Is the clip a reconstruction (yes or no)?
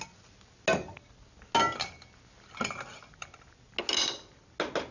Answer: no